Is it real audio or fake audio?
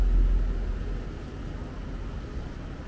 real